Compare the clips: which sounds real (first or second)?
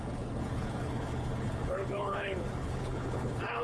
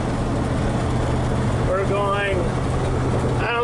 second